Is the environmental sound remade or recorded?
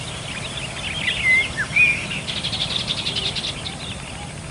recorded